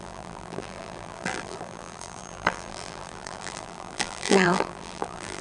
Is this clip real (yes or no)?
no